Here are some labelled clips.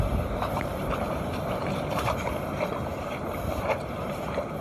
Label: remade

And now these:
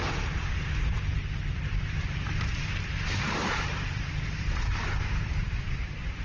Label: remade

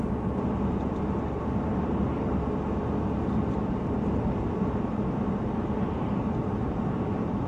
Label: recorded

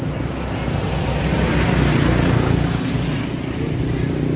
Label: recorded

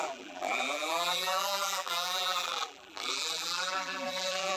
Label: remade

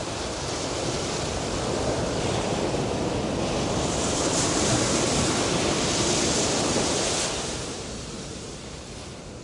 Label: remade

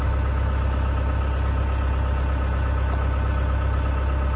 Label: recorded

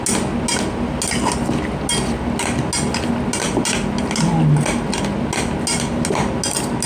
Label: recorded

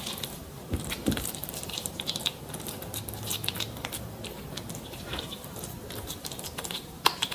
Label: remade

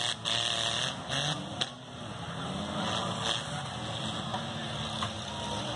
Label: recorded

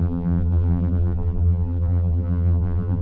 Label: remade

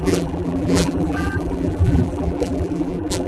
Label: remade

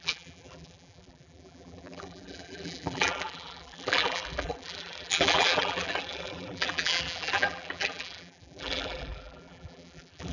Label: remade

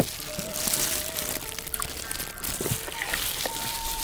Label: remade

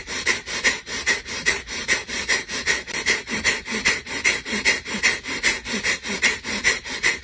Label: remade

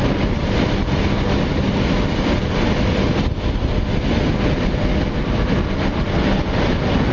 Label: recorded